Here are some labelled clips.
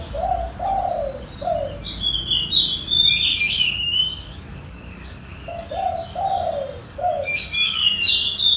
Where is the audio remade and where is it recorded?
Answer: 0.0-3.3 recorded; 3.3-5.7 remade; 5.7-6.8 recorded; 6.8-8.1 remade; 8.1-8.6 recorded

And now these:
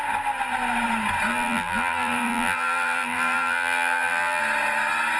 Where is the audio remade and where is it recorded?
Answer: 0.0-1.3 recorded; 1.3-4.4 remade; 4.4-5.2 recorded

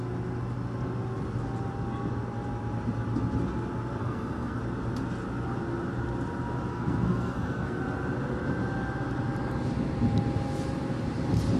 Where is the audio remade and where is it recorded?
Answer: 0.0-4.0 recorded; 4.0-4.6 remade; 4.6-6.7 recorded; 6.7-7.8 remade; 7.8-11.6 recorded

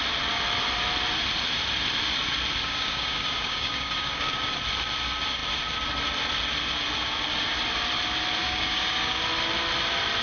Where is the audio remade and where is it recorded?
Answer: 0.0-2.6 recorded; 2.6-4.5 remade; 4.5-8.4 recorded; 8.4-9.2 remade; 9.2-10.2 recorded

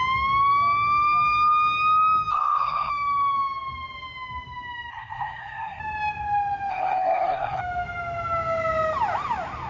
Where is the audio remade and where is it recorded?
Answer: 0.0-2.3 recorded; 2.3-2.9 remade; 2.9-4.9 recorded; 4.9-5.8 remade; 5.8-6.7 recorded; 6.7-7.6 remade; 7.6-9.7 recorded